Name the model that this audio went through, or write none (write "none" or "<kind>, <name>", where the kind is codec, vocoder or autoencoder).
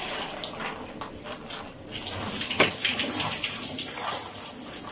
none